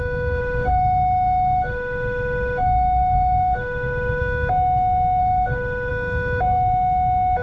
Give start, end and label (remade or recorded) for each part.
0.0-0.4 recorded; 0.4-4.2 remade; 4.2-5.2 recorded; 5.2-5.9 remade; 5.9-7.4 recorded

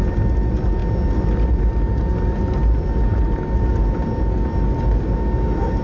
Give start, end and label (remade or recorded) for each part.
0.0-5.8 recorded